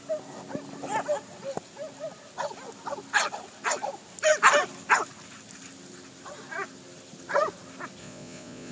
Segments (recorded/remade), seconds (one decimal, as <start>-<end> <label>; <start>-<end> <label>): 0.0-8.0 recorded; 8.0-8.7 remade